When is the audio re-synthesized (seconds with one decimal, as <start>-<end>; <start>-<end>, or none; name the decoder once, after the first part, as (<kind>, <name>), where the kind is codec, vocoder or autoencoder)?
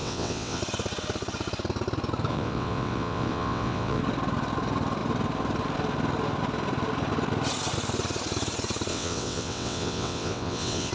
0.0-0.6 (vocoder, WaveNeXt); 2.3-4.0; 8.9-10.9